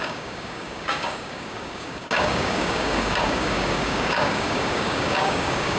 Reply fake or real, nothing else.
fake